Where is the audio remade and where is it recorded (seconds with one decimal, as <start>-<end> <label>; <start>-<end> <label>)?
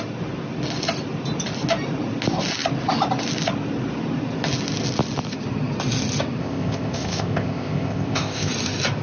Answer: 0.0-6.4 recorded; 6.4-8.5 remade; 8.5-9.0 recorded